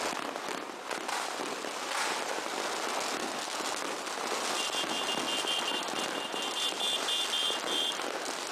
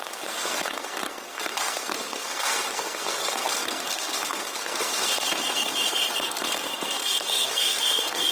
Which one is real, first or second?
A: first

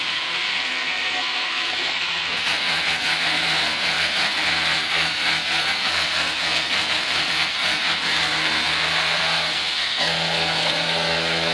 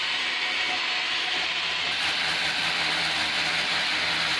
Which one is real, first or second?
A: second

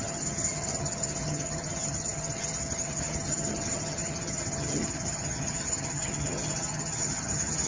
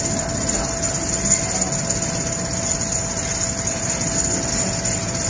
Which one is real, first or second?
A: second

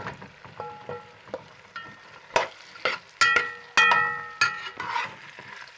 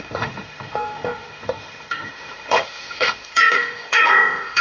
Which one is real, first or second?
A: first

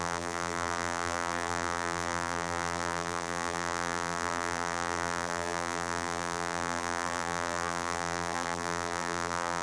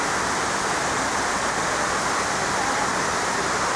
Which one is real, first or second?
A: second